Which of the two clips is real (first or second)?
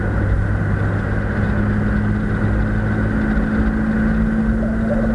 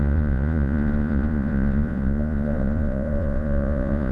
first